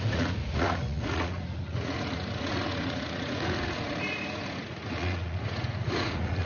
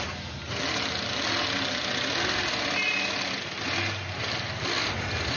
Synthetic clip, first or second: first